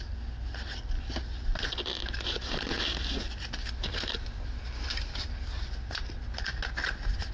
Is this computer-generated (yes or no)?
no